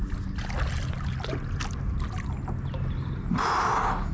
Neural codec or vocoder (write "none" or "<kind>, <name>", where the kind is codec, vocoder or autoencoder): none